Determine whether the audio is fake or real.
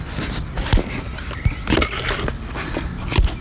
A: real